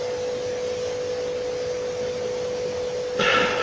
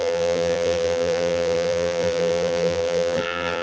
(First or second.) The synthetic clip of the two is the second